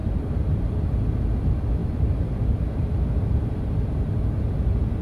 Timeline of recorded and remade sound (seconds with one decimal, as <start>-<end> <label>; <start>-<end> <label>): 0.0-0.7 remade; 0.7-1.8 recorded; 1.8-3.6 remade; 3.6-5.0 recorded